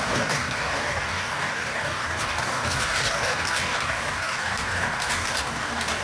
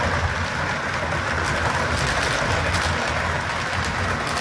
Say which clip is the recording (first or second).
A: second